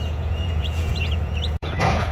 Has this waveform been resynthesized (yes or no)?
yes